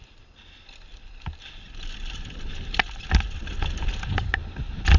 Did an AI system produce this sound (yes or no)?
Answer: no